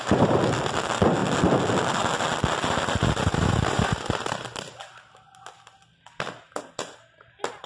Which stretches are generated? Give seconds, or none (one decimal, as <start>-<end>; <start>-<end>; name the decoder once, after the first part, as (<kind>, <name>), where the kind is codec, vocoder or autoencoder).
none